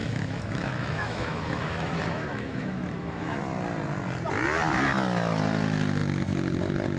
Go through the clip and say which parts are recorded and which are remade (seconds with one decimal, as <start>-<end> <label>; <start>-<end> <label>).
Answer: 0.0-3.4 remade; 3.4-7.0 recorded